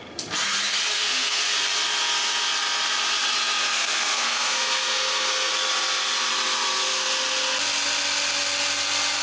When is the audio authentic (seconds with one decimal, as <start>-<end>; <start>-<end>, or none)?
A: 0.0-0.9; 1.4-3.6; 5.5-9.2